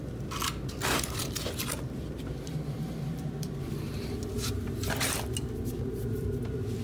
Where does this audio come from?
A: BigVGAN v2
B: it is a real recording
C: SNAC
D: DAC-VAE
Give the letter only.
A